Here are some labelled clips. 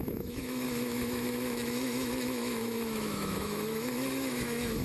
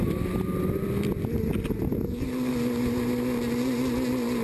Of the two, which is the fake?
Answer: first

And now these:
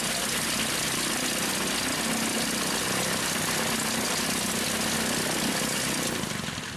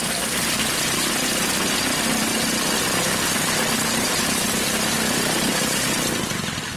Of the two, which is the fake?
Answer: second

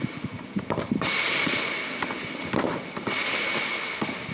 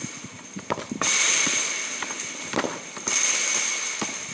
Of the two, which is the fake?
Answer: second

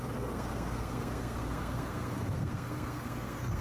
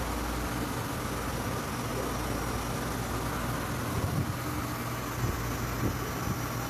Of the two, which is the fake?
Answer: first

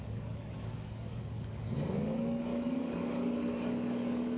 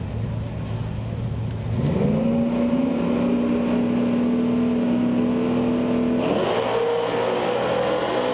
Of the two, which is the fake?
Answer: first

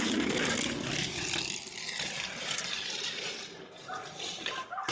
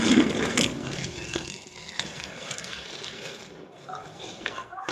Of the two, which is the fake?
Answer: second